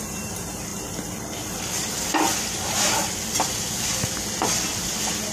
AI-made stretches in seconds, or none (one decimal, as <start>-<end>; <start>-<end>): 0.7-3.9